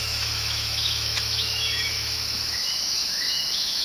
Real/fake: fake